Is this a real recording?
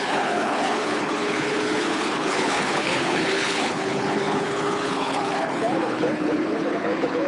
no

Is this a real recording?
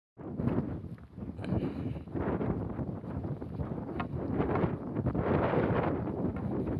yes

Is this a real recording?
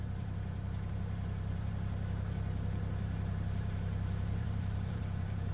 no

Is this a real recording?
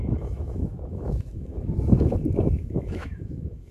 no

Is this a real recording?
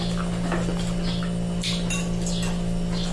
yes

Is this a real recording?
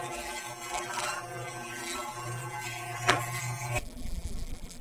no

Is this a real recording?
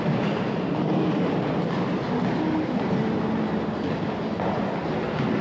yes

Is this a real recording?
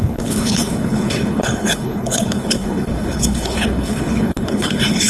no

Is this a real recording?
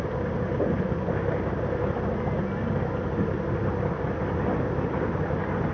yes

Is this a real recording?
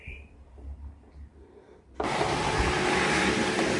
yes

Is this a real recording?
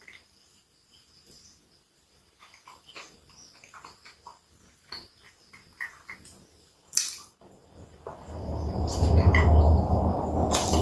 yes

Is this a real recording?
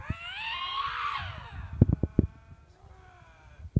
yes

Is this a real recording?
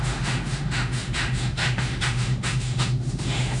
no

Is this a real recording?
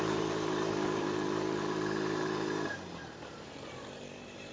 no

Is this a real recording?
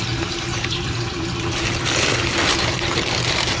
no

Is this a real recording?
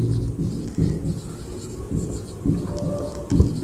no